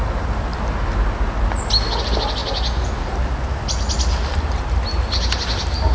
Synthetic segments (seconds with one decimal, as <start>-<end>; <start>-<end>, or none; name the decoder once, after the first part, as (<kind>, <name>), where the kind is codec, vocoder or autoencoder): none

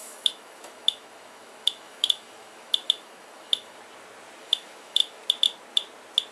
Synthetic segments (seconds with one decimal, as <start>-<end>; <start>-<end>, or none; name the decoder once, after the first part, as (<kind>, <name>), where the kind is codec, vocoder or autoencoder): 0.0-3.8 (autoencoder, DAC-VAE); 4.4-5.2

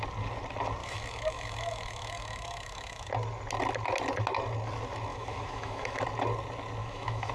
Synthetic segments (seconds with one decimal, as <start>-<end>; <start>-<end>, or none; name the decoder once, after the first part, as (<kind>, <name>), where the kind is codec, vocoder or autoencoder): 0.8-3.1 (autoencoder, DAC-VAE); 5.1-6.0; 6.8-7.3

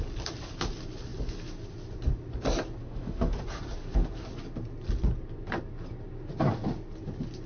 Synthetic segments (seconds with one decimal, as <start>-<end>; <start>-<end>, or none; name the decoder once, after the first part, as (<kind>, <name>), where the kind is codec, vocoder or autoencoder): 2.8-3.4 (autoencoder, DAC-VAE)

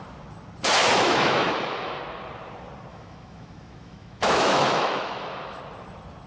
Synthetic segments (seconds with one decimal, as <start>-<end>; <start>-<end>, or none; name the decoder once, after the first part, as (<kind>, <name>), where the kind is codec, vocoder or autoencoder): 0.8-2.0 (autoencoder, DAC-VAE); 2.9-5.6

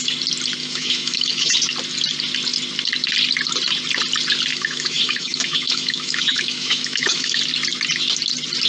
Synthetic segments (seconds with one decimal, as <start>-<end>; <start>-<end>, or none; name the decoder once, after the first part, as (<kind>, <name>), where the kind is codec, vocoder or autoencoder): 0.6-1.5 (autoencoder, DAC-VAE); 4.5-7.4

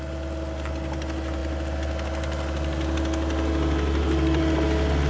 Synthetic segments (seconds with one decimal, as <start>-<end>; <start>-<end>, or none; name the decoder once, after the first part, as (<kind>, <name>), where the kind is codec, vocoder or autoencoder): none

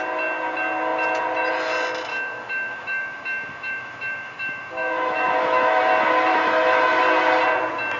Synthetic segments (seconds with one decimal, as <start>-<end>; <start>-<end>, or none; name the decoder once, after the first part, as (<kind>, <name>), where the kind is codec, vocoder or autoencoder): 2.1-5.8 (autoencoder, DAC-VAE); 6.3-7.0